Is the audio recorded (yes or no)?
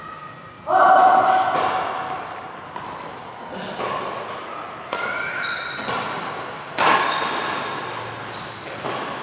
yes